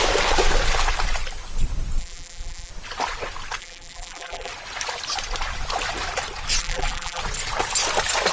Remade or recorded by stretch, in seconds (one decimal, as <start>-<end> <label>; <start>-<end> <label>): 0.0-2.0 recorded; 2.0-2.7 remade; 2.7-3.6 recorded; 3.6-4.5 remade; 4.5-6.6 recorded; 6.6-7.2 remade; 7.2-8.3 recorded